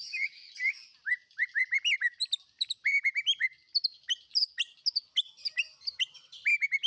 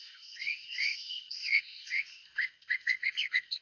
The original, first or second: first